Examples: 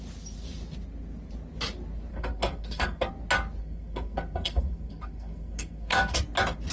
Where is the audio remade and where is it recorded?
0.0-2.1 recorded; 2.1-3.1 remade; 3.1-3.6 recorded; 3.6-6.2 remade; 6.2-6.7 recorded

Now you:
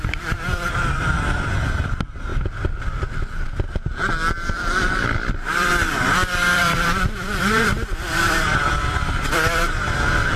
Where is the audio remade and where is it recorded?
0.0-2.3 remade; 2.3-4.3 recorded; 4.3-10.4 remade

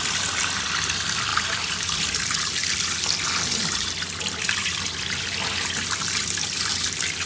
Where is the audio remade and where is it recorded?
0.0-7.3 remade

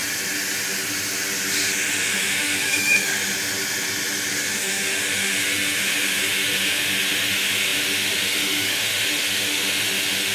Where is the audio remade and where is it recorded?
0.0-1.9 recorded; 1.9-3.1 remade; 3.1-4.3 recorded; 4.3-10.3 remade

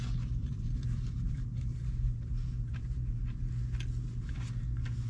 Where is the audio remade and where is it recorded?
0.0-0.4 recorded; 0.4-3.5 remade; 3.5-5.1 recorded

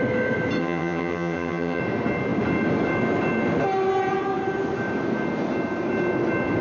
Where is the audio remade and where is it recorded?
0.0-0.6 recorded; 0.6-1.8 remade; 1.8-6.6 recorded

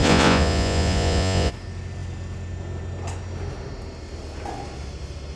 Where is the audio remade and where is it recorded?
0.0-1.5 remade; 1.5-5.4 recorded